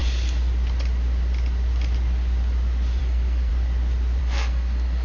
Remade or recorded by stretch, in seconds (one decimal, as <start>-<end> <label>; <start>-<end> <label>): 0.0-3.0 recorded; 3.0-3.5 remade; 3.5-4.2 recorded; 4.2-5.0 remade